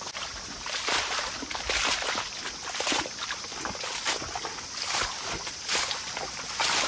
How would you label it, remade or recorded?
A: recorded